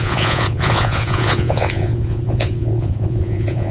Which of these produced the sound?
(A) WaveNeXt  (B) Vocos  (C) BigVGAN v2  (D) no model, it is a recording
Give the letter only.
B